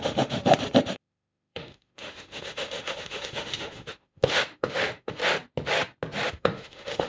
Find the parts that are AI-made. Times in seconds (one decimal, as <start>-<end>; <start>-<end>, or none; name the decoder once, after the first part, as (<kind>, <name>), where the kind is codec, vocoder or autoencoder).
0.0-0.4 (autoencoder, DAC-VAE); 0.9-5.2; 6.3-7.1